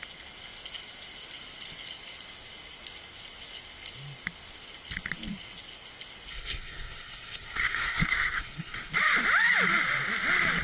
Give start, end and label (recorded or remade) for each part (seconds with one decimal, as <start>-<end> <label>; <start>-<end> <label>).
0.0-6.3 recorded; 6.3-8.9 remade; 8.9-10.6 recorded